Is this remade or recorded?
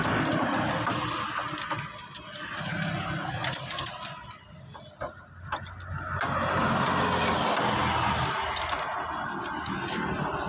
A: recorded